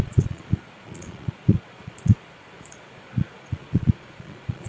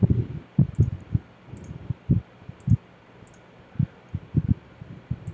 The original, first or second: second